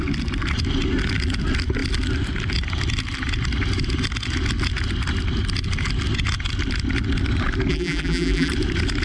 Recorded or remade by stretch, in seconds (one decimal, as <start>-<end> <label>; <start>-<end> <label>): 0.0-7.7 recorded; 7.7-8.5 remade; 8.5-9.0 recorded